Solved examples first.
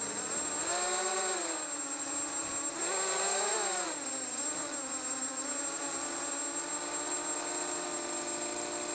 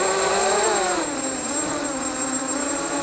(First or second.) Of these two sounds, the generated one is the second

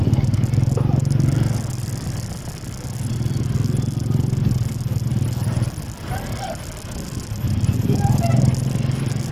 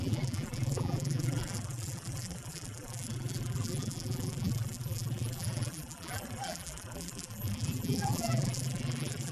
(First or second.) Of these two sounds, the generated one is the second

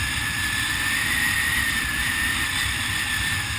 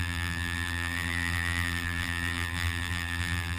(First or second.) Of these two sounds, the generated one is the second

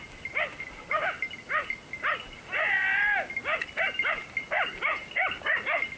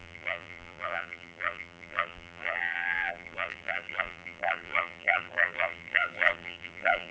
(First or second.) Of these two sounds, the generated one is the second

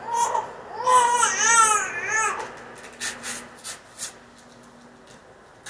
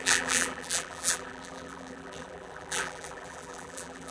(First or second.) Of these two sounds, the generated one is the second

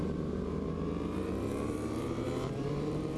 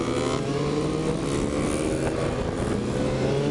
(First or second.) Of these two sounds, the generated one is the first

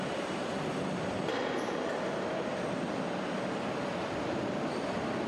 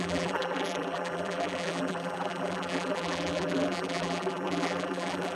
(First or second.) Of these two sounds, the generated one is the second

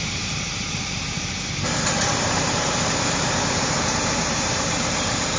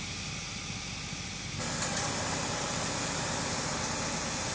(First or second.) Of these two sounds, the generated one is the first